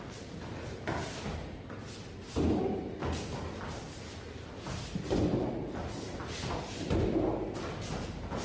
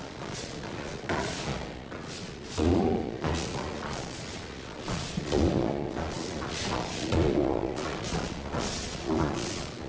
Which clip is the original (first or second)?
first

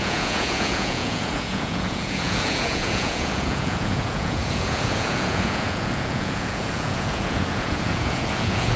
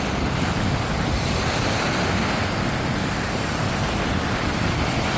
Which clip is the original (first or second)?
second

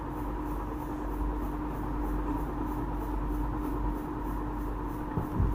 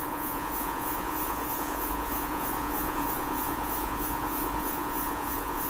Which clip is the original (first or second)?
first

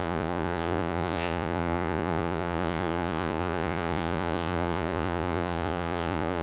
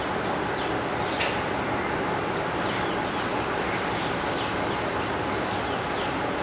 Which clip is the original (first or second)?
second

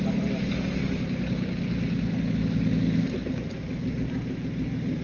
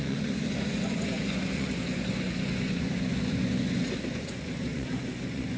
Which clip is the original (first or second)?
first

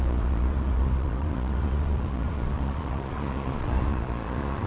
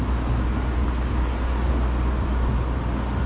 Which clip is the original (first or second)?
second